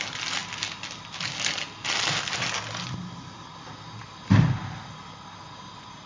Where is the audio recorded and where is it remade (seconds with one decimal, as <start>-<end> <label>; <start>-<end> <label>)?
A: 0.0-6.1 recorded